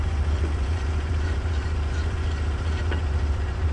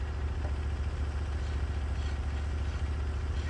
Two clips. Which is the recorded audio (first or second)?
second